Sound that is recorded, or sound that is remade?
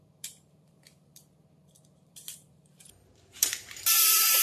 remade